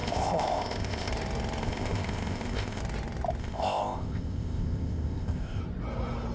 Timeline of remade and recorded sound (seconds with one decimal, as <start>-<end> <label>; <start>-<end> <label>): 0.0-1.1 remade; 1.1-1.6 recorded; 1.6-2.8 remade; 2.8-3.4 recorded; 3.4-5.6 remade; 5.6-6.3 recorded